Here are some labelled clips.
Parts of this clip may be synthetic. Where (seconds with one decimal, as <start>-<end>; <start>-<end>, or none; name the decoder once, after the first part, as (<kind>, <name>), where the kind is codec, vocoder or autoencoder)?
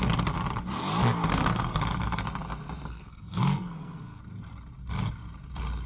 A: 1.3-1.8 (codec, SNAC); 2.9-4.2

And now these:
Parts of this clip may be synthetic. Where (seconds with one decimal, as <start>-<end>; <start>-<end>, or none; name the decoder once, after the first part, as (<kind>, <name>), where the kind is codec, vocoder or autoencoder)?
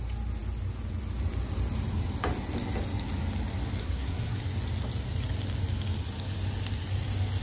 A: 3.8-4.4 (codec, SNAC)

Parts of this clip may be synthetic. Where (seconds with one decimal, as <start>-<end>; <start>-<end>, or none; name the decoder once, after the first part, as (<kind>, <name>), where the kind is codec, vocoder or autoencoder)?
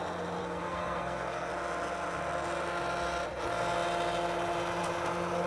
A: 0.4-1.5 (codec, SNAC)